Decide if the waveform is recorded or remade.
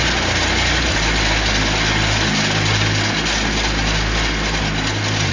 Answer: recorded